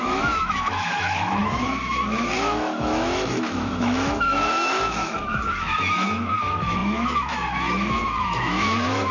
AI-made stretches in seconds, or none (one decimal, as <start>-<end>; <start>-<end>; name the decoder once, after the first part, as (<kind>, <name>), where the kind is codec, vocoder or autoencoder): 0.0-9.1 (autoencoder, DAC-VAE)